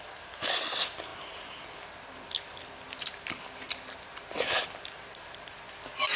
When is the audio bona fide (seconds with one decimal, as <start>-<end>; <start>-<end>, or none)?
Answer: 0.0-6.2